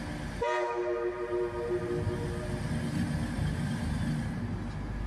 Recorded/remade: recorded